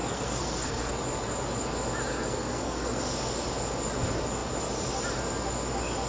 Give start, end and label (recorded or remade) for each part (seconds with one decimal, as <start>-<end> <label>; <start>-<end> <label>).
0.0-0.9 remade; 0.9-2.1 recorded; 2.1-3.0 remade; 3.0-6.1 recorded

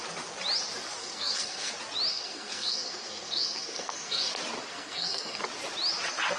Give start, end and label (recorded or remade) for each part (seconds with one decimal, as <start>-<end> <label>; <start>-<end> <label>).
0.0-1.0 recorded; 1.0-1.7 remade; 1.7-2.1 recorded; 2.1-4.3 remade; 4.3-4.7 recorded; 4.7-5.4 remade; 5.4-6.4 recorded

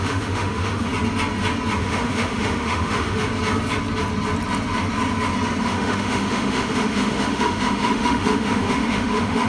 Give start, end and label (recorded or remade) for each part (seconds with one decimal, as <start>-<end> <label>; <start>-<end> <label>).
0.0-0.9 remade; 0.9-1.8 recorded; 1.8-3.3 remade; 3.3-5.6 recorded; 5.6-9.5 remade